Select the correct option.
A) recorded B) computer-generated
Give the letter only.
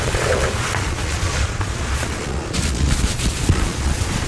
B